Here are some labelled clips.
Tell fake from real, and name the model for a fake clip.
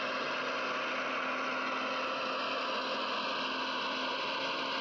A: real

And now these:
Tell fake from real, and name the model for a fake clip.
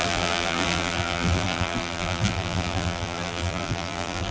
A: fake, vocoder, BigVGAN v2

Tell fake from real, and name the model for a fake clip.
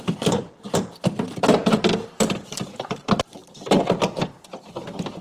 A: fake, vocoder, BigVGAN v2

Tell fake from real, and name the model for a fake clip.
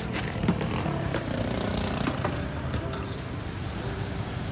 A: fake, vocoder, BigVGAN v2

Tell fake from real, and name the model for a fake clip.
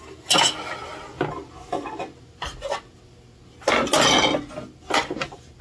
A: real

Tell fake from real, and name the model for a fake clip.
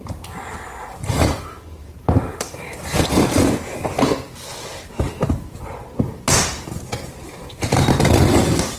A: real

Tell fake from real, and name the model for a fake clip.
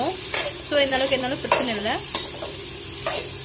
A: fake, vocoder, BigVGAN v2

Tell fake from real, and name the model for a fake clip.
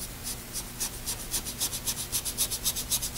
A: real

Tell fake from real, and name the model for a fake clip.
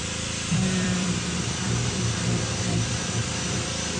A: fake, vocoder, BigVGAN v2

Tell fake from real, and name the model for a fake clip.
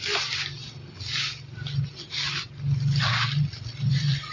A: fake, vocoder, BigVGAN v2